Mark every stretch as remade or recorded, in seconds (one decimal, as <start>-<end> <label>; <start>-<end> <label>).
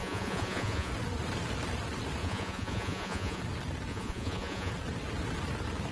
0.0-0.9 remade; 0.9-2.2 recorded; 2.2-3.4 remade; 3.4-3.9 recorded; 3.9-4.7 remade; 4.7-5.9 recorded